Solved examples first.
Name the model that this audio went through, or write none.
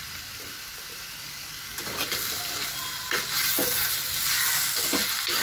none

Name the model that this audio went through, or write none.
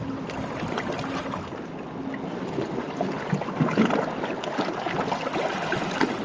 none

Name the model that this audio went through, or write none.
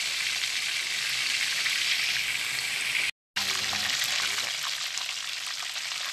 none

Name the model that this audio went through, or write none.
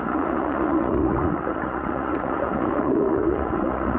vocoder, Vocos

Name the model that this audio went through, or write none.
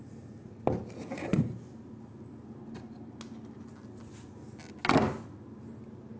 none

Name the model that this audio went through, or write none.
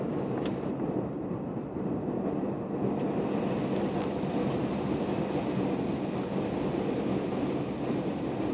none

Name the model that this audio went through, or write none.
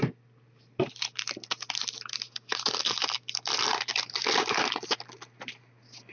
none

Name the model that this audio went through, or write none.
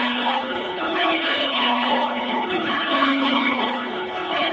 codec, HILCodec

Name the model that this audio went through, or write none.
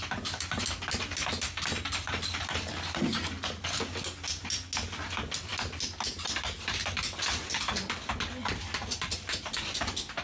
none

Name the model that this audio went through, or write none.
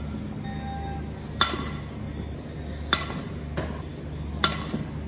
none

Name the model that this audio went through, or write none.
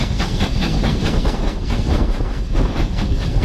codec, SNAC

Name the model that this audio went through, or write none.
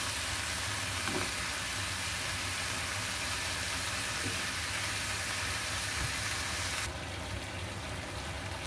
none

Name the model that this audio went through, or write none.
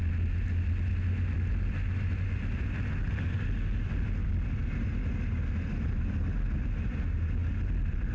none